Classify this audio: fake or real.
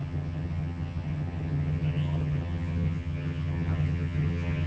fake